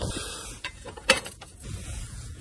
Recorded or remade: remade